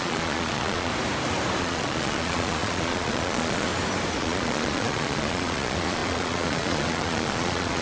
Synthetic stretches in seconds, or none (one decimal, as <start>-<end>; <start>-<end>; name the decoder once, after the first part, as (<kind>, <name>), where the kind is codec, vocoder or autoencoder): 0.0-0.9 (vocoder, Vocos); 1.6-3.7; 4.2-7.8